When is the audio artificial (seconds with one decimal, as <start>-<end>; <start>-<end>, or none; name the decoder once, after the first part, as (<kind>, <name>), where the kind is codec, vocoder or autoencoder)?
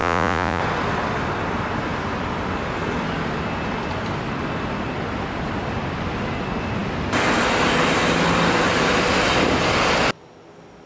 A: 0.0-0.6 (vocoder, Vocos)